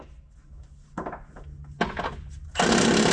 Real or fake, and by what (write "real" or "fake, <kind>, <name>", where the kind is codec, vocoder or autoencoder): real